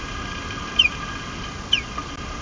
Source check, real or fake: real